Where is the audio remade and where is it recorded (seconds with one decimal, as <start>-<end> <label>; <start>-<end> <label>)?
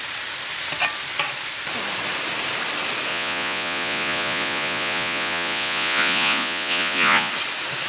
0.0-3.1 recorded; 3.1-7.3 remade; 7.3-7.9 recorded